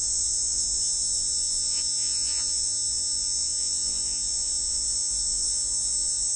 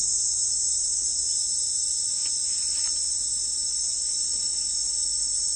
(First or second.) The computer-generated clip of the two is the first